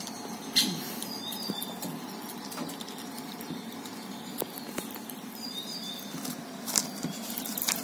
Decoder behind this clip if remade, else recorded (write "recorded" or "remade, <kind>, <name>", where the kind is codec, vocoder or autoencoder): recorded